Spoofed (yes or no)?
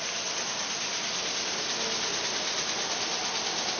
no